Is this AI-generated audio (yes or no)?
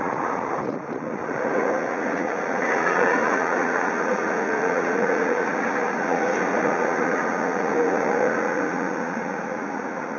yes